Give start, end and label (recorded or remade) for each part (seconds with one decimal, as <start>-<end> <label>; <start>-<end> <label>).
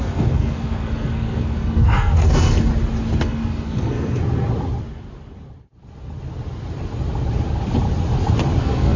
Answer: 0.0-2.7 remade; 2.7-3.2 recorded; 3.2-4.2 remade; 4.2-8.6 recorded; 8.6-9.0 remade